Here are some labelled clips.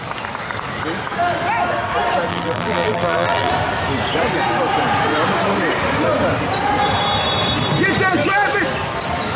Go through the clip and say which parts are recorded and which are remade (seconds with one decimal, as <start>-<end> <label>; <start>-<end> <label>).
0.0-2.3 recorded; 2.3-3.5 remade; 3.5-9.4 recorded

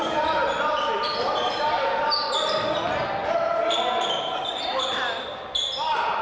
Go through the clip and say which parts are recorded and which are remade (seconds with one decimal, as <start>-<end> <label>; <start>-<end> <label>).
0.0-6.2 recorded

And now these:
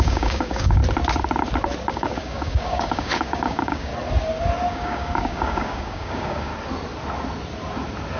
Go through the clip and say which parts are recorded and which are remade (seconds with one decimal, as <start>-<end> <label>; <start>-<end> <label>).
0.0-0.8 remade; 0.8-1.9 recorded; 1.9-3.9 remade; 3.9-4.7 recorded; 4.7-6.5 remade; 6.5-8.2 recorded

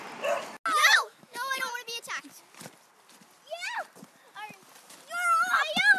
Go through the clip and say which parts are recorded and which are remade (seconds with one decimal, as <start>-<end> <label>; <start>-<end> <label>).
0.0-0.8 recorded; 0.8-1.6 remade; 1.6-6.0 recorded